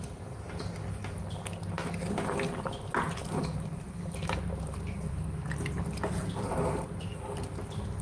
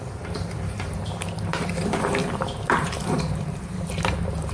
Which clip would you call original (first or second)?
first